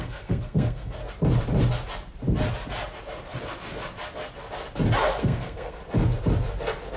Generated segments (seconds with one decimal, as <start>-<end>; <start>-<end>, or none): 0.0-1.0; 5.2-5.8